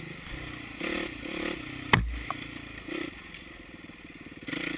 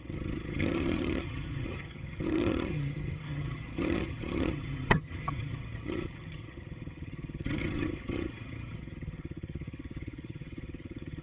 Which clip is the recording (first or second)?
first